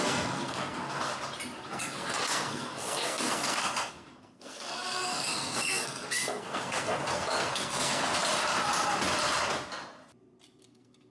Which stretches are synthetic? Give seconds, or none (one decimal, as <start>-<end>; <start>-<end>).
0.0-1.1; 1.7-8.1; 10.6-11.1